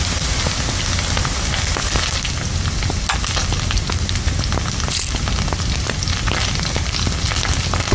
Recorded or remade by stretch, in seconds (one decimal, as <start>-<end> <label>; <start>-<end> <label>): 0.0-7.9 recorded